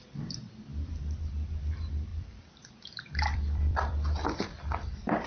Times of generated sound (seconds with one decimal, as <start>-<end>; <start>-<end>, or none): 2.1-5.3